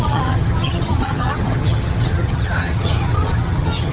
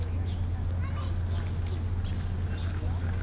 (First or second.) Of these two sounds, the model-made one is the first